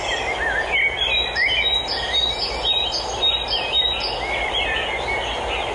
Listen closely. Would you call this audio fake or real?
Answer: real